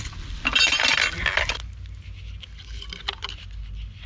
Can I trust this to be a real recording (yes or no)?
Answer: yes